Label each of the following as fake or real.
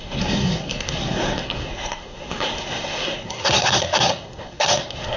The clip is fake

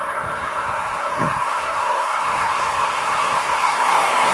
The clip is fake